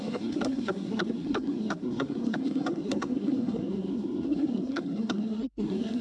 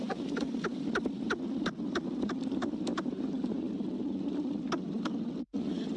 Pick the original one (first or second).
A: second